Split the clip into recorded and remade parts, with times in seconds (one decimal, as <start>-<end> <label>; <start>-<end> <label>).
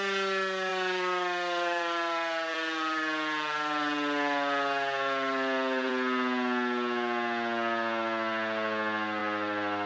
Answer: 0.0-0.7 recorded; 0.7-5.9 remade; 5.9-9.2 recorded; 9.2-9.9 remade